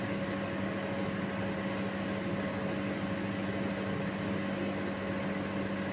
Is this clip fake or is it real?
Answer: real